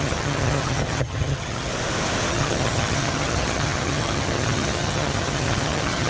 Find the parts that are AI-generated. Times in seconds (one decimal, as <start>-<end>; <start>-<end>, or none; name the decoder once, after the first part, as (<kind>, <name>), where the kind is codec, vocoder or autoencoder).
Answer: 0.0-1.7 (vocoder, HiFi-GAN); 2.3-6.1